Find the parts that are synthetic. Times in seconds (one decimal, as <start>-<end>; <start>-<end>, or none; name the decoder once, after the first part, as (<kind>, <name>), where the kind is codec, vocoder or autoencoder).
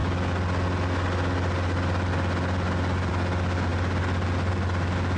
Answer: none